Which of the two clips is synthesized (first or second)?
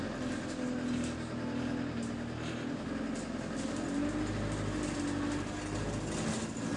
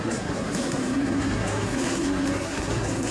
second